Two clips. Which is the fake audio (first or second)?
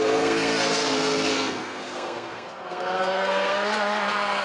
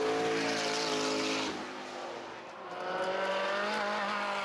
first